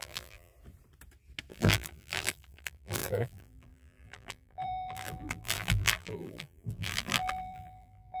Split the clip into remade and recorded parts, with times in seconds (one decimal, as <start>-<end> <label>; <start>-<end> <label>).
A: 0.0-0.5 remade; 0.5-1.5 recorded; 1.5-8.2 remade